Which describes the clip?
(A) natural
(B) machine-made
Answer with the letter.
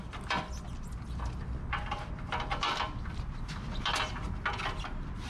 A